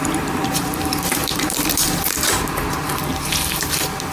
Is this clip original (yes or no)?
no